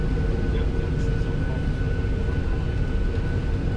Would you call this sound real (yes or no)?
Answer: yes